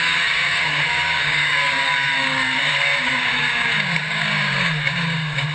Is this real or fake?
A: fake